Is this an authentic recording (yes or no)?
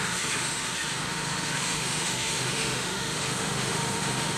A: no